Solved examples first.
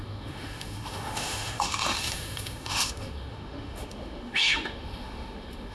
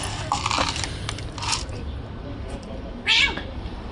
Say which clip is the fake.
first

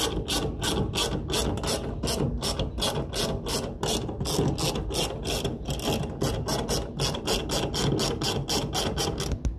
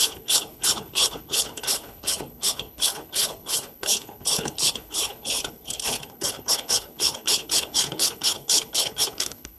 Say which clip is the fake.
second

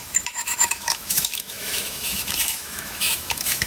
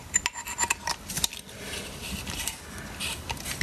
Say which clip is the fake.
first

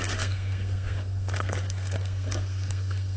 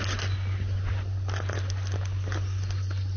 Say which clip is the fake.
first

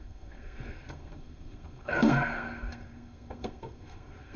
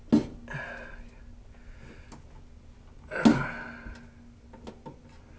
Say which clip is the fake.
first